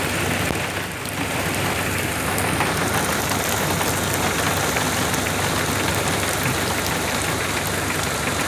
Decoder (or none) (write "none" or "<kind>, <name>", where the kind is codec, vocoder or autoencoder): none